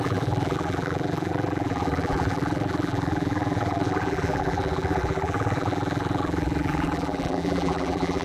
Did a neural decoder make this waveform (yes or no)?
yes